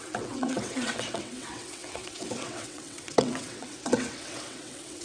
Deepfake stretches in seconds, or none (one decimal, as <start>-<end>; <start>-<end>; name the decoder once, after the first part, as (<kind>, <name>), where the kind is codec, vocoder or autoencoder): 0.0-5.0 (vocoder, WaveNeXt)